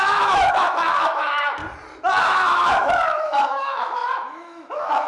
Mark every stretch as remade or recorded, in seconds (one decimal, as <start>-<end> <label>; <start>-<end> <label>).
0.0-1.6 remade; 1.6-2.2 recorded; 2.2-5.1 remade